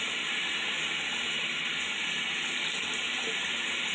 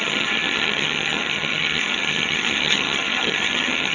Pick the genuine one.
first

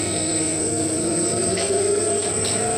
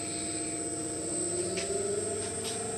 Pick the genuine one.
second